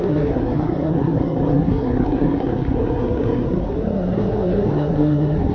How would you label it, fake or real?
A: fake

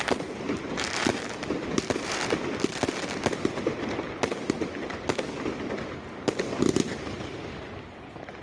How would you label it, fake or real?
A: real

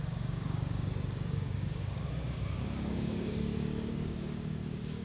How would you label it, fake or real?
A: fake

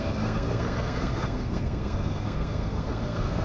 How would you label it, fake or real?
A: fake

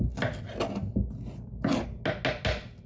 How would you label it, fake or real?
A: real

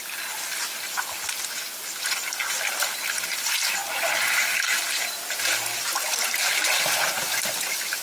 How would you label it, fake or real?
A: real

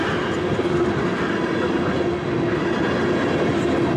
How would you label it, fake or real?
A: real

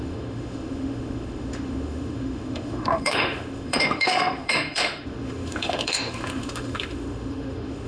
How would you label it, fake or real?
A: fake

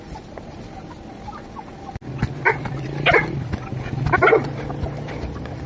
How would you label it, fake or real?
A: real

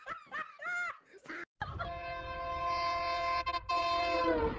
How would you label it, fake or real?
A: real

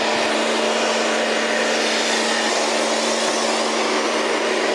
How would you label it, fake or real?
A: real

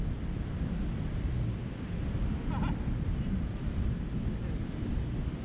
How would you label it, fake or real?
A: real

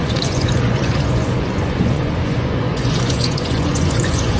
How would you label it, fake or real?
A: fake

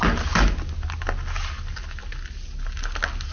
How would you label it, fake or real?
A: real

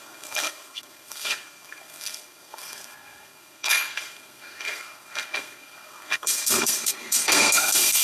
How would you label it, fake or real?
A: fake